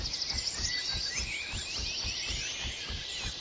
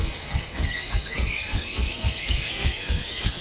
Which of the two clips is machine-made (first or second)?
second